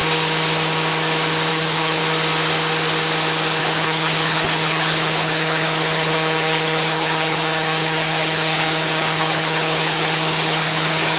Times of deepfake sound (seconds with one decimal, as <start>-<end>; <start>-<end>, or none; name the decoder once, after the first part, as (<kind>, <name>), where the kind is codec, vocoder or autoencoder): 1.5-2.0 (codec, HILCodec); 3.6-11.2

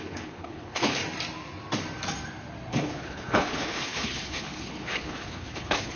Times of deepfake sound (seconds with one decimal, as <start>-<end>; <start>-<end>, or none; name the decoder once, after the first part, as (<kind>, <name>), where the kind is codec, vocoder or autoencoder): 0.0-1.0 (codec, HILCodec); 2.7-6.0